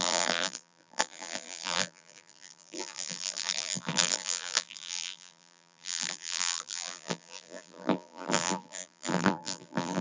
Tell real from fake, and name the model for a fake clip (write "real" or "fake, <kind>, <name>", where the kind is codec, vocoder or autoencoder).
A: fake, vocoder, BigVGAN v2